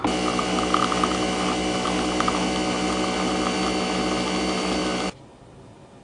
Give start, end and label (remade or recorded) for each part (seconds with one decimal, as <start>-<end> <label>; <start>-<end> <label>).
0.0-6.0 recorded